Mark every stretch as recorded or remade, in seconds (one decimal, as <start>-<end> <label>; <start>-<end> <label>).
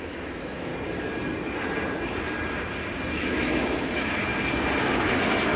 0.0-0.7 remade; 0.7-3.1 recorded; 3.1-4.3 remade; 4.3-5.6 recorded